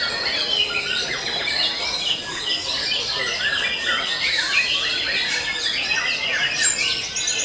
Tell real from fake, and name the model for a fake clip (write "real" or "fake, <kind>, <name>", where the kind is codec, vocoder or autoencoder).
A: real